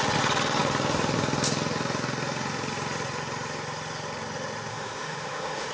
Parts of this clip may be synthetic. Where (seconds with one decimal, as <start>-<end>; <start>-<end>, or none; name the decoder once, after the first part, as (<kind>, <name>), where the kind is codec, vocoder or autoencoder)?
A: 4.7-5.7 (autoencoder, DAC-VAE)